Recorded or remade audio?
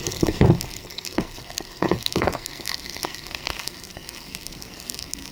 remade